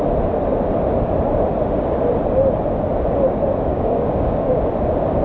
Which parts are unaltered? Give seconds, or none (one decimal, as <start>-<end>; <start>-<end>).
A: 0.0-3.7; 4.6-5.2